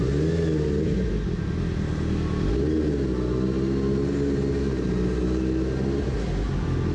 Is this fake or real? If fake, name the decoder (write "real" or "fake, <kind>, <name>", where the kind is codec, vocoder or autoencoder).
real